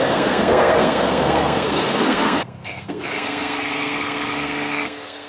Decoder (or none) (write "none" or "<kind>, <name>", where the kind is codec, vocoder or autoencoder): codec, SNAC